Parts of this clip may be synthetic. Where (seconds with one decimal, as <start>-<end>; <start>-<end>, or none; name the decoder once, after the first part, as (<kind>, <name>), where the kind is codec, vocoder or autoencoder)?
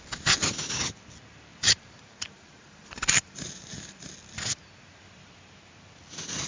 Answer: 1.5-4.1 (vocoder, BigVGAN v2)